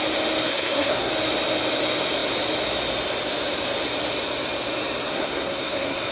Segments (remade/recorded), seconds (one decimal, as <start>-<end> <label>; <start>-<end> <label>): 0.0-0.5 recorded; 0.5-1.1 remade; 1.1-5.1 recorded; 5.1-6.1 remade